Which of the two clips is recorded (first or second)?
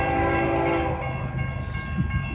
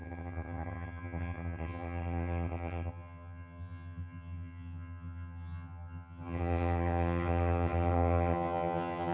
first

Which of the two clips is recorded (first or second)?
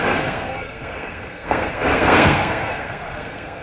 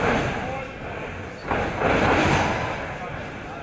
second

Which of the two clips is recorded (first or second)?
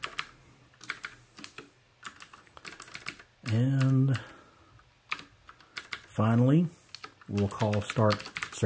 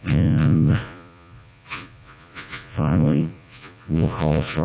first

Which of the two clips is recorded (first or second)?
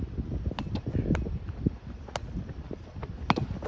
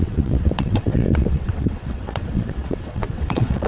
first